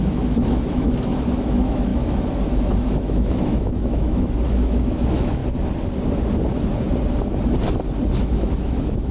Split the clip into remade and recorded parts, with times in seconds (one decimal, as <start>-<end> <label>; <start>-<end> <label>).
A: 0.0-5.4 remade; 5.4-8.2 recorded; 8.2-9.1 remade